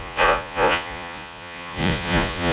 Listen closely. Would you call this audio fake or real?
fake